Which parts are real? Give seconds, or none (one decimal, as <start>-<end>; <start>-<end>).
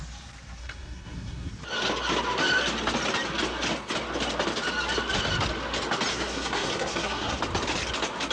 0.0-0.6; 1.5-6.1; 7.4-8.3